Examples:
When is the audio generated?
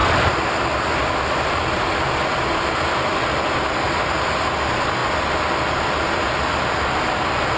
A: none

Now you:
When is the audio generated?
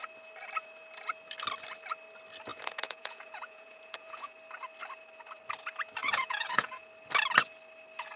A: 2.5-4.3 (vocoder, Vocos); 6.0-6.9